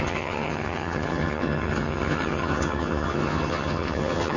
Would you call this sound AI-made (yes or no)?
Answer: yes